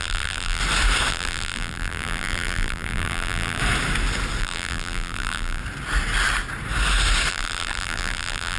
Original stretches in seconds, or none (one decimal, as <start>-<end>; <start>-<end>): 0.6-1.1; 3.6-4.4; 5.6-7.3